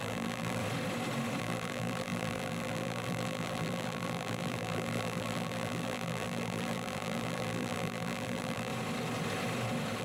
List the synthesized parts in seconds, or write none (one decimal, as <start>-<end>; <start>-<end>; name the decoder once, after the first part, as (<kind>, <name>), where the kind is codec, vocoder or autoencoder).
0.0-0.6 (vocoder, BigVGAN v2); 1.4-8.7